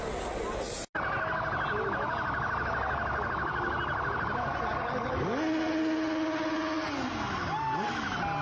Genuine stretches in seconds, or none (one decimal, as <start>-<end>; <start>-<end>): 0.0-8.4